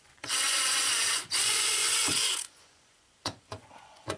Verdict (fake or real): fake